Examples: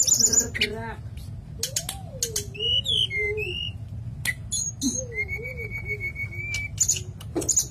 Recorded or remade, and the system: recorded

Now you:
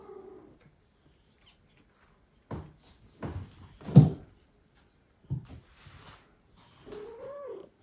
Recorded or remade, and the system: recorded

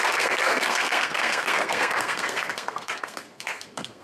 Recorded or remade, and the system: remade, codec, SNAC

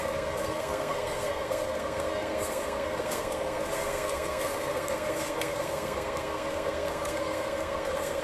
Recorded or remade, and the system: remade, codec, SNAC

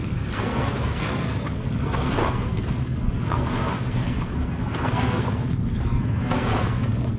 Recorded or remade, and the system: remade, codec, SNAC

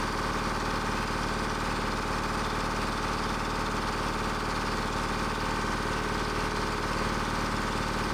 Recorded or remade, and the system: recorded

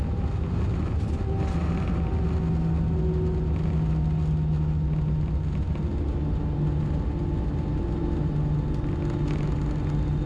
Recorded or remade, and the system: recorded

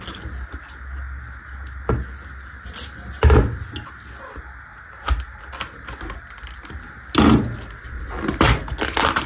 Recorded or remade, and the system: recorded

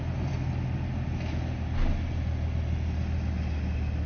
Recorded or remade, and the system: recorded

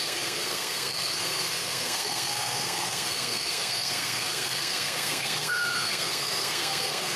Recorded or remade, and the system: remade, codec, SNAC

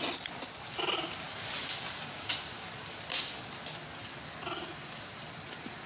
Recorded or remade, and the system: recorded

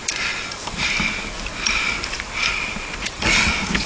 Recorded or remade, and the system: recorded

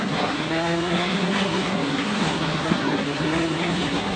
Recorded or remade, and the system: remade, codec, SNAC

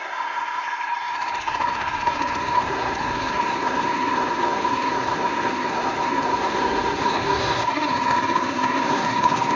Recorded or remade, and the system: remade, codec, SNAC